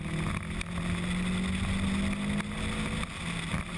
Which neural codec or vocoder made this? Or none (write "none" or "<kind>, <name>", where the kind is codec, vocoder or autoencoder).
none